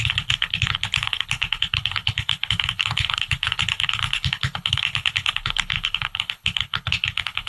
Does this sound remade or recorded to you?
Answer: remade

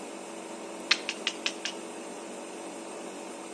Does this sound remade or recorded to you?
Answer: recorded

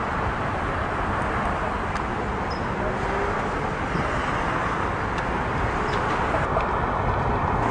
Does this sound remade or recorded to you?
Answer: recorded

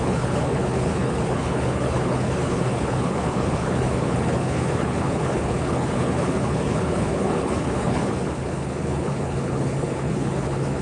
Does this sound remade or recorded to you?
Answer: remade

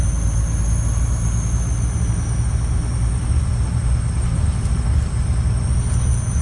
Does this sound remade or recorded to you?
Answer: recorded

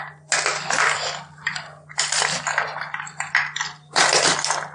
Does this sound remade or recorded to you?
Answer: recorded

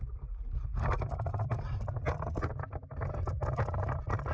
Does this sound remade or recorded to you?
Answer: recorded